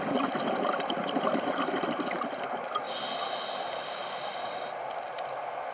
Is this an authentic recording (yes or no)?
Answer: yes